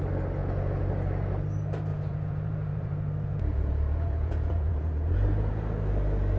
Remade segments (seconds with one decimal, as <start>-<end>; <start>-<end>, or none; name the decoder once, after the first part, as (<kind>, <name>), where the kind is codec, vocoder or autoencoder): 0.4-0.9 (vocoder, Vocos); 1.9-5.5